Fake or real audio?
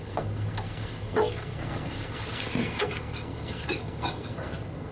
fake